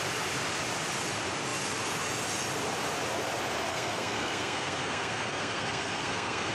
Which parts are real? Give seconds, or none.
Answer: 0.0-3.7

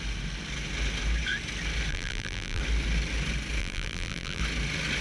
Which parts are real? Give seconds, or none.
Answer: 0.0-1.9; 2.6-3.6; 4.4-5.0

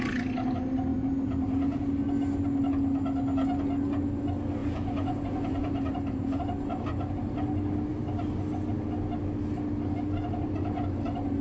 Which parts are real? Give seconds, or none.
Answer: 0.0-0.9; 1.9-4.6; 6.4-11.4

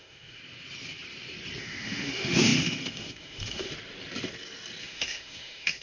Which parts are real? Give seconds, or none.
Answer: 0.4-1.6; 3.7-4.8

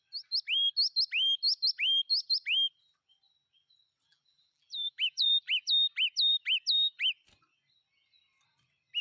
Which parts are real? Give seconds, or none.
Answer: 0.0-4.1; 5.7-9.0

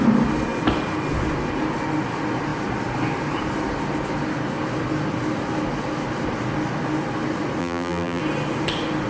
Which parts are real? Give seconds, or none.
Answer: 0.0-7.6; 8.2-9.1

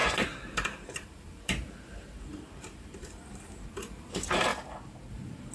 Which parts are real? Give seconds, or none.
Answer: 4.5-5.1

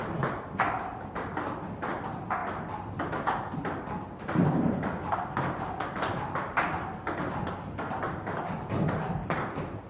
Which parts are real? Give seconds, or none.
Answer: 2.4-4.2